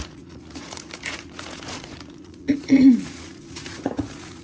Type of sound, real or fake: fake